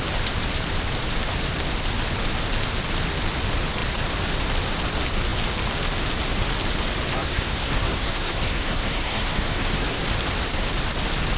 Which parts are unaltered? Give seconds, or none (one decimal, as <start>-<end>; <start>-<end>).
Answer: 0.0-7.1; 10.0-11.4